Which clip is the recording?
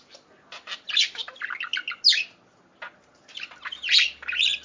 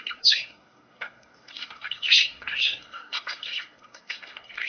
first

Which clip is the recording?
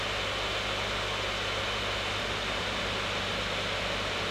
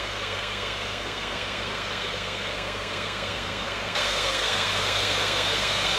first